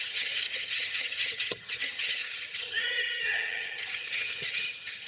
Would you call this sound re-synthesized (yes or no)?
yes